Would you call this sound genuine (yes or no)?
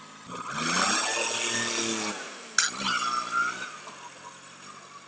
yes